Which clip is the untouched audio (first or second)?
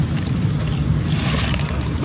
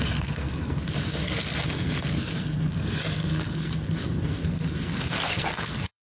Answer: first